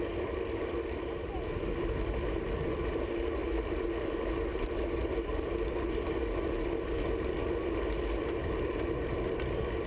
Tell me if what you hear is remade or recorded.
recorded